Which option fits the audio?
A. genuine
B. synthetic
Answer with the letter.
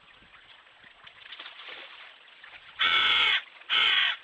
B